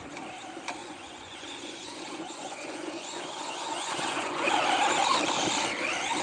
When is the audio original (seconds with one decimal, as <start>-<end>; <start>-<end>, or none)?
0.0-0.8; 4.5-6.2